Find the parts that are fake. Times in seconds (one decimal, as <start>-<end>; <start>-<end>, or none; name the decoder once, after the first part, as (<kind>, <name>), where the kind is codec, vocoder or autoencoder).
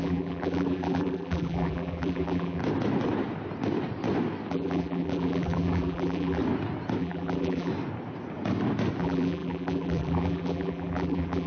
0.0-2.6 (vocoder, BigVGAN v2); 4.5-6.4; 7.0-7.7; 9.0-11.5